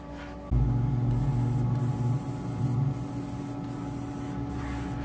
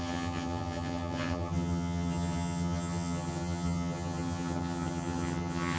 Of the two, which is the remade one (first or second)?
second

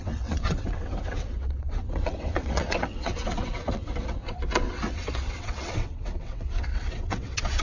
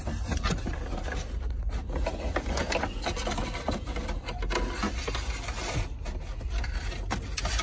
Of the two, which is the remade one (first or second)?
first